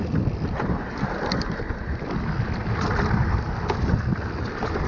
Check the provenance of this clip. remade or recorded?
recorded